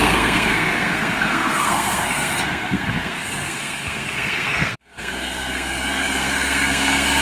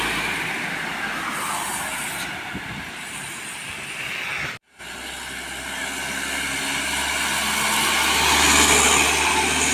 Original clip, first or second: second